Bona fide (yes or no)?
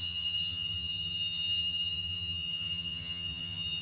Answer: no